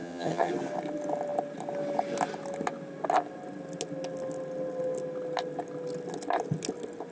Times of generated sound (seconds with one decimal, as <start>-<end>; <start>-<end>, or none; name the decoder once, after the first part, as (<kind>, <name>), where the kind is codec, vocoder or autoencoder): 0.0-0.5 (vocoder, HiFi-GAN)